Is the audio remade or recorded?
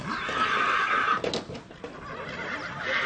recorded